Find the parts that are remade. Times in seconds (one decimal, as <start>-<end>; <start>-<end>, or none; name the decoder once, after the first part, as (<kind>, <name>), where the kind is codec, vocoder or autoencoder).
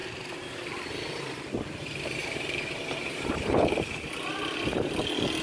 2.2-4.1 (vocoder, BigVGAN v2)